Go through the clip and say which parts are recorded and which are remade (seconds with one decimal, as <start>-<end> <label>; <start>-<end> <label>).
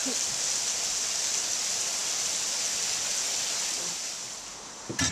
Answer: 0.0-1.1 recorded; 1.1-2.0 remade; 2.0-3.7 recorded; 3.7-5.1 remade